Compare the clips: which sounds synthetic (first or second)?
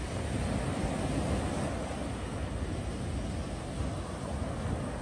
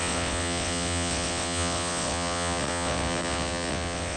second